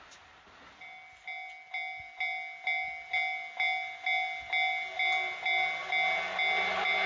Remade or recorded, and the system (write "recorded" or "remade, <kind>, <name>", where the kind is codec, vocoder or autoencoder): recorded